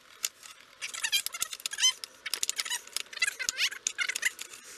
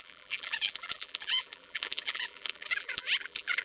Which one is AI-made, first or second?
second